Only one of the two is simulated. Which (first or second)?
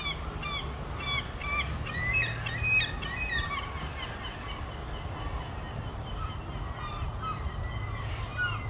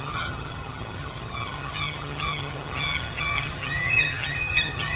second